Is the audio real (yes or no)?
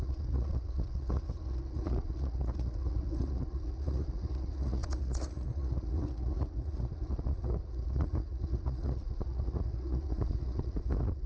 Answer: no